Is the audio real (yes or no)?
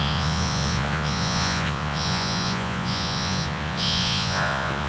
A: no